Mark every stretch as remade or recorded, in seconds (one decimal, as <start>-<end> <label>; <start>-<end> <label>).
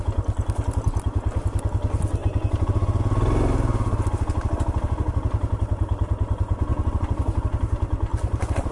0.0-2.2 recorded; 2.2-3.0 remade; 3.0-6.7 recorded; 6.7-7.4 remade; 7.4-8.1 recorded; 8.1-8.7 remade